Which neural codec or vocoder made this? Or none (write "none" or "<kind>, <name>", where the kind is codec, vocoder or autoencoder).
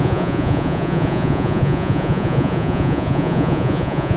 vocoder, Vocos